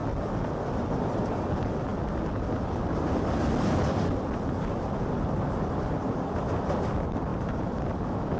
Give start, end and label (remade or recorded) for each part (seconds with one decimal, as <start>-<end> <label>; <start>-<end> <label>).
0.0-8.4 recorded